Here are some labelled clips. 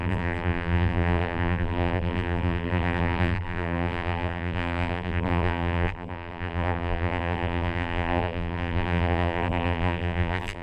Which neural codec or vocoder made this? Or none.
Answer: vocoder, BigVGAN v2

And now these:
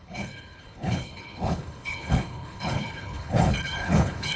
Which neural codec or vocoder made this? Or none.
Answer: codec, HILCodec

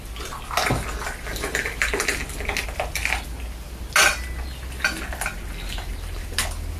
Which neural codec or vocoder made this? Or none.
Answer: none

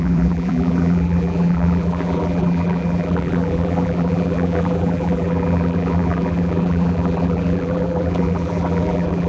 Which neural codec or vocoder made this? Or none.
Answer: vocoder, BigVGAN v2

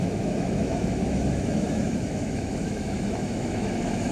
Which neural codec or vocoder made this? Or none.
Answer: autoencoder, DAC-VAE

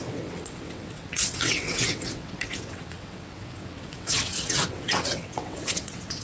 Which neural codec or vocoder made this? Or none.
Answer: vocoder, WaveNeXt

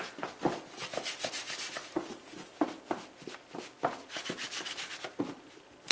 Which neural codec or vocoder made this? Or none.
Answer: none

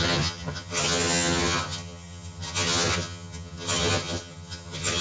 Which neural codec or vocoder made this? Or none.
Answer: vocoder, HiFi-GAN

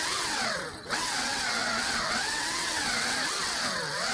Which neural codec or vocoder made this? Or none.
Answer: vocoder, WaveNeXt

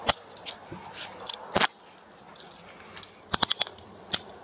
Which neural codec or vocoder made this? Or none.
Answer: none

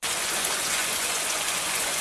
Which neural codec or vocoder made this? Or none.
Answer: vocoder, Vocos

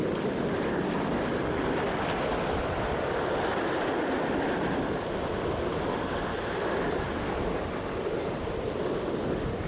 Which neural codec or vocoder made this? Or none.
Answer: none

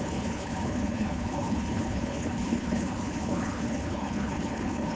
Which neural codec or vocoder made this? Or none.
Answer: codec, HILCodec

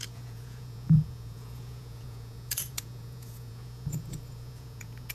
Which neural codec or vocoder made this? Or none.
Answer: vocoder, Vocos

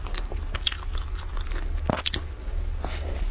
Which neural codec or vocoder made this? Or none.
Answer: none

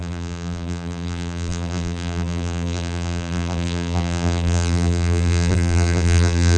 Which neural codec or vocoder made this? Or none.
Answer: vocoder, BigVGAN v2